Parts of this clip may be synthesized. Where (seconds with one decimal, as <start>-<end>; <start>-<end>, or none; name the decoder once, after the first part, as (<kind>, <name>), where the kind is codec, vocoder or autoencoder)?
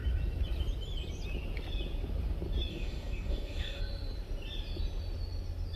2.7-3.8 (codec, DAC)